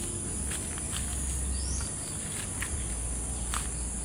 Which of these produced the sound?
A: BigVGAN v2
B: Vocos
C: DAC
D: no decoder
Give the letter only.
D